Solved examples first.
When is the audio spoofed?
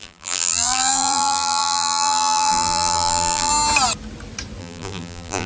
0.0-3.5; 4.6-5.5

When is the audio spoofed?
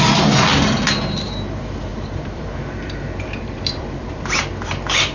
1.9-4.4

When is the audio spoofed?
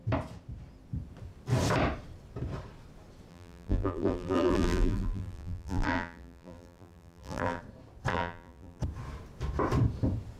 3.3-7.6; 8.1-8.8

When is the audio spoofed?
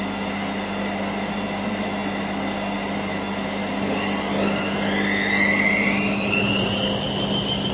none